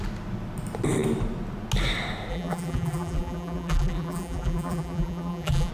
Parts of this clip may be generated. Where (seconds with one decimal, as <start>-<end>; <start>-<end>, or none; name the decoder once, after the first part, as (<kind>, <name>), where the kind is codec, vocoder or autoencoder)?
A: 2.3-5.7 (vocoder, BigVGAN v2)